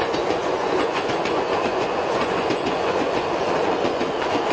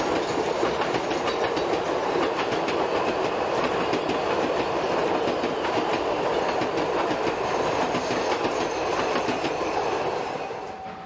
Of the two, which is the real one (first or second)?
second